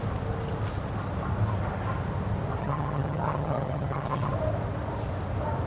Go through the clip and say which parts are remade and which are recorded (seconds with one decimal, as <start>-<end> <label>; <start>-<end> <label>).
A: 0.0-2.6 recorded; 2.6-4.3 remade; 4.3-5.7 recorded

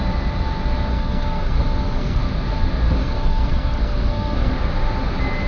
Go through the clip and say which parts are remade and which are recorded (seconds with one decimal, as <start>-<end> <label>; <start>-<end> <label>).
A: 0.0-0.9 recorded; 0.9-2.2 remade; 2.2-3.0 recorded; 3.0-4.5 remade; 4.5-5.5 recorded